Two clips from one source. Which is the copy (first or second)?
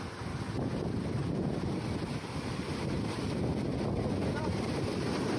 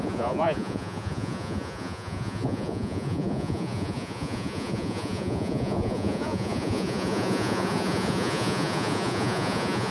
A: second